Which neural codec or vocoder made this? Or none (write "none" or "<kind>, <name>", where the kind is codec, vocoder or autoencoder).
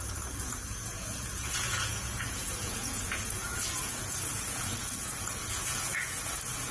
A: vocoder, Vocos